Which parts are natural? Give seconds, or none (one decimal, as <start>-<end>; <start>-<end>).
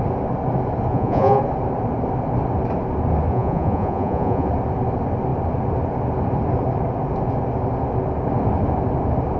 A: 0.0-0.9; 1.4-3.3; 4.5-9.4